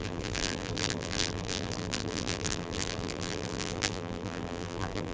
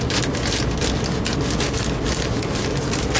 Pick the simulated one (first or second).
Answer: first